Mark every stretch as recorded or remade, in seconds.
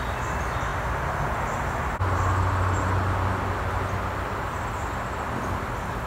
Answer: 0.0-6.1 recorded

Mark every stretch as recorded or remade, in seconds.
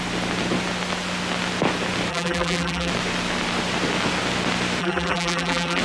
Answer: 0.0-2.1 recorded; 2.1-2.9 remade; 2.9-4.8 recorded; 4.8-5.8 remade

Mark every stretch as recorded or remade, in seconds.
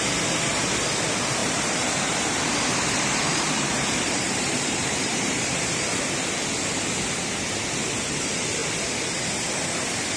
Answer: 0.0-1.4 recorded; 1.4-6.0 remade; 6.0-8.6 recorded; 8.6-9.3 remade; 9.3-10.2 recorded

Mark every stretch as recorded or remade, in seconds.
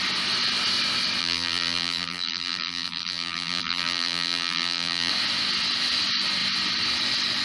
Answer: 0.0-1.2 recorded; 1.2-5.1 remade; 5.1-7.4 recorded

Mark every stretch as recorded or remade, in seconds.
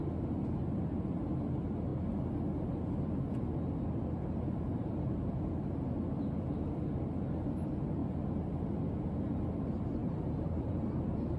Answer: 0.0-4.7 recorded; 4.7-6.0 remade; 6.0-10.0 recorded; 10.0-11.4 remade